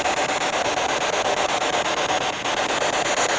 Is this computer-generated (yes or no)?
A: no